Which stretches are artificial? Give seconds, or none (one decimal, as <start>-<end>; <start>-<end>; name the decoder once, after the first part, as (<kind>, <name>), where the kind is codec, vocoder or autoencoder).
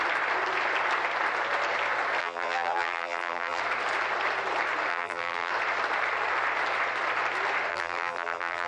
2.2-3.6 (vocoder, BigVGAN v2); 4.9-5.5; 7.7-8.7